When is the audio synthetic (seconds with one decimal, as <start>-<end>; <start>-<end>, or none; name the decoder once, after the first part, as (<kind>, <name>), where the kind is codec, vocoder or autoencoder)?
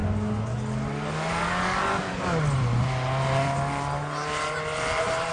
1.3-2.1 (codec, DAC)